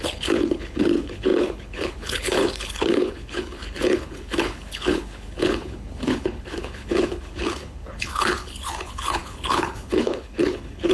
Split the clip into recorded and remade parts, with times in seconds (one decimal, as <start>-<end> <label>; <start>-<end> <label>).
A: 0.0-10.9 remade

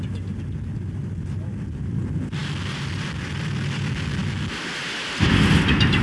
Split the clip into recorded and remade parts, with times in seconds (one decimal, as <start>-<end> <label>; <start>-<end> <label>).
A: 0.0-6.0 recorded

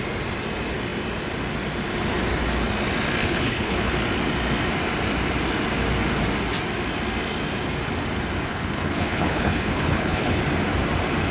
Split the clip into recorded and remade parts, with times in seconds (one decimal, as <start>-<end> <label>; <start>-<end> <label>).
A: 0.0-3.2 recorded; 3.2-3.9 remade; 3.9-8.5 recorded; 8.5-10.4 remade; 10.4-11.3 recorded

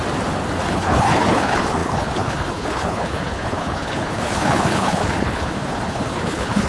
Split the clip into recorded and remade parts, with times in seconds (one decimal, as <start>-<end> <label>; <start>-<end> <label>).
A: 0.0-0.7 recorded; 0.7-6.7 remade

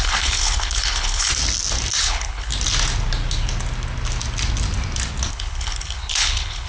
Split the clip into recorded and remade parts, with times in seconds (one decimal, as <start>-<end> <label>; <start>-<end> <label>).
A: 0.0-1.3 remade; 1.3-2.0 recorded; 2.0-2.5 remade; 2.5-5.3 recorded; 5.3-6.7 remade